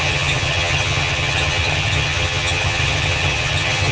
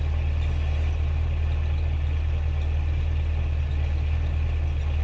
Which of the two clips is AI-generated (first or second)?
first